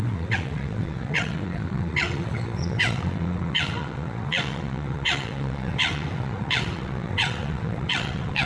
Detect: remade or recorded remade